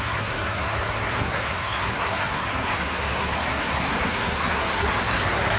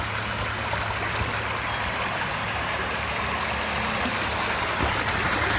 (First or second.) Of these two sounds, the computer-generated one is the first